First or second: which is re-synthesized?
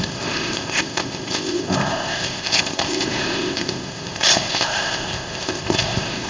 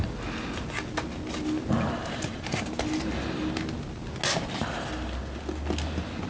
first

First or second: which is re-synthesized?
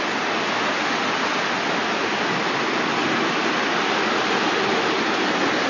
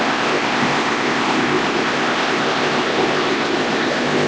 second